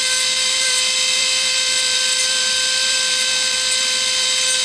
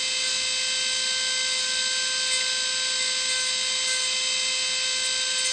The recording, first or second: second